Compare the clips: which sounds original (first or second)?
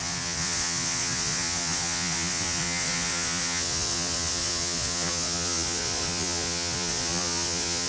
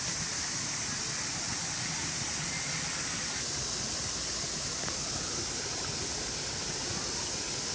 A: second